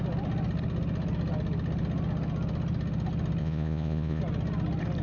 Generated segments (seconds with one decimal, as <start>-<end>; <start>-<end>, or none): 3.4-4.2